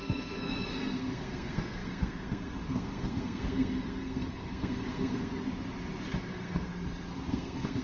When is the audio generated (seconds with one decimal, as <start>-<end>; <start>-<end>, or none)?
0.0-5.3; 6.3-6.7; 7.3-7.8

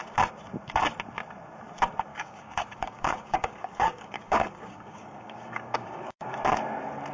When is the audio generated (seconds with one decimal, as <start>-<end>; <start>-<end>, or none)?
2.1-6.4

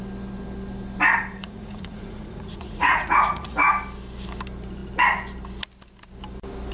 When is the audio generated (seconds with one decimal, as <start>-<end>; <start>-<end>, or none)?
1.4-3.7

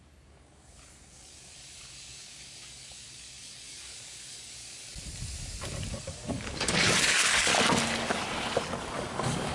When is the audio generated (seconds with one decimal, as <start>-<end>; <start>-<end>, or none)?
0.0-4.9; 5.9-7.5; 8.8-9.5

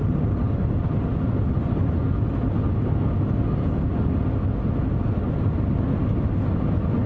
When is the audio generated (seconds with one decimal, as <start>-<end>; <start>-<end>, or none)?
none

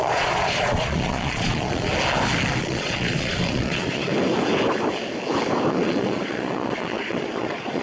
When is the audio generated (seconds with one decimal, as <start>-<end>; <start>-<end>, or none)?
0.0-1.9; 2.6-4.1; 5.7-7.8

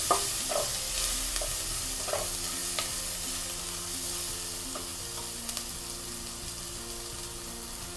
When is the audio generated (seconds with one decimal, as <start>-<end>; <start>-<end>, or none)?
none

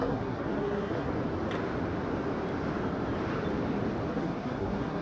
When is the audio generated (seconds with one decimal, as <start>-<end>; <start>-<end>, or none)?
0.0-1.1; 4.1-5.0